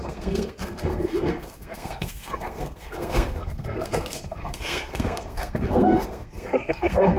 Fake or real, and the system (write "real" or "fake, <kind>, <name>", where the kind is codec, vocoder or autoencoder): fake, codec, SNAC